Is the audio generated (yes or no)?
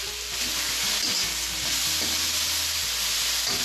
no